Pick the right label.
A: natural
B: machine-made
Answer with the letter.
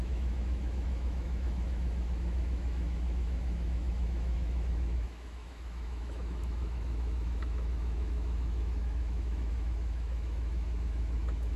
B